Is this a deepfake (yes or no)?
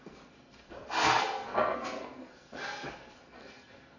yes